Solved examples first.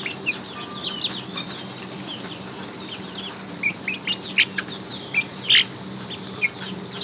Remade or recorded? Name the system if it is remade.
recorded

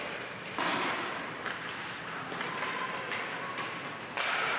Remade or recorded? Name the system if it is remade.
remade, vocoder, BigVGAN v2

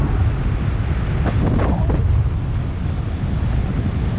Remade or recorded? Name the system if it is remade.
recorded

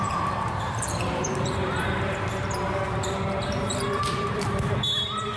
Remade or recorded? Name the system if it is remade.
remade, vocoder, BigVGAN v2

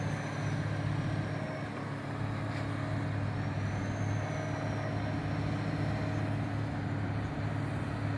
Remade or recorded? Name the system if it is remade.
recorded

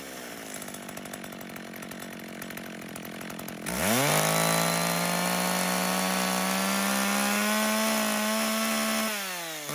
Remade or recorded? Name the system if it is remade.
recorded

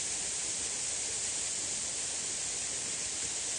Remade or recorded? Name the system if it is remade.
recorded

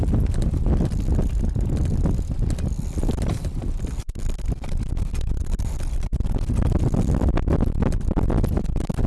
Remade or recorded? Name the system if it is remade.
recorded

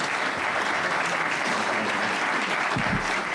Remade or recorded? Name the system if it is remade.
remade, vocoder, BigVGAN v2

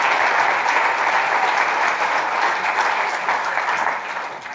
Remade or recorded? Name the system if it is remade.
recorded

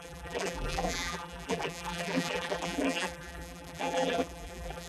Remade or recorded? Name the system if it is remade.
remade, vocoder, BigVGAN v2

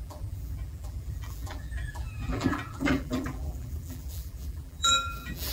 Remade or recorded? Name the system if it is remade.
remade, vocoder, BigVGAN v2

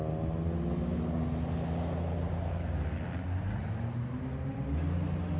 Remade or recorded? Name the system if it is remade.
recorded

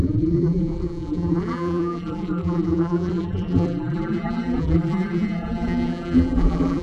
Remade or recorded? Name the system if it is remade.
remade, vocoder, BigVGAN v2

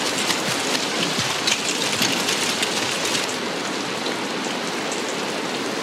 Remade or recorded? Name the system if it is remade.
recorded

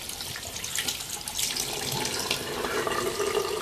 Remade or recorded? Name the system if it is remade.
recorded